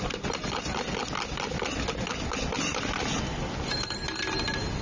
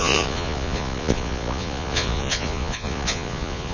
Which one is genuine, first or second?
first